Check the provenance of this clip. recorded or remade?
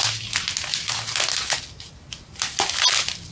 recorded